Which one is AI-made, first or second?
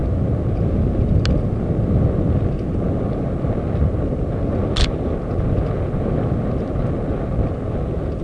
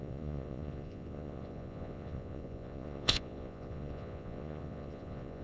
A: second